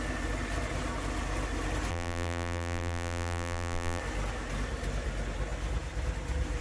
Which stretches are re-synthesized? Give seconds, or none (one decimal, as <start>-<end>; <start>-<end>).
1.9-4.0